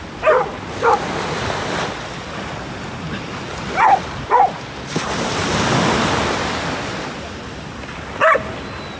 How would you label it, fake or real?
real